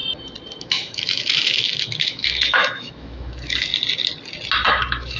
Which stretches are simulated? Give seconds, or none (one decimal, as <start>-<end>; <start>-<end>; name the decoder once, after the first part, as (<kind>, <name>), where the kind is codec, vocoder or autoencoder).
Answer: 0.6-3.7 (autoencoder, DAC-VAE); 4.7-5.2